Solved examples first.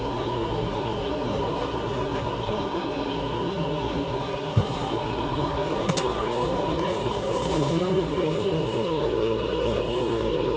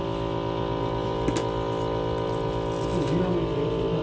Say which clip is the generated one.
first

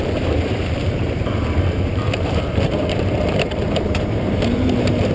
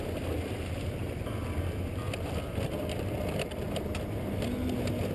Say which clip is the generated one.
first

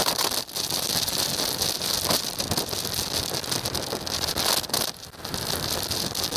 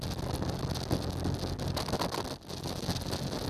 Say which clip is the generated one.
first